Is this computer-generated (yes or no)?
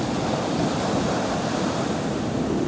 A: no